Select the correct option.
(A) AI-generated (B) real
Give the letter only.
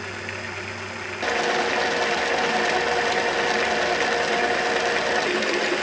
B